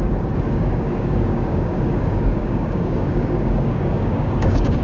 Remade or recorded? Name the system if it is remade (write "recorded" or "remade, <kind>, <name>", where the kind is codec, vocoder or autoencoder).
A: remade, codec, DAC